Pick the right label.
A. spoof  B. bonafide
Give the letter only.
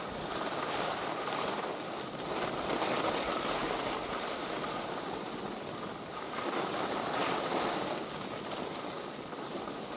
B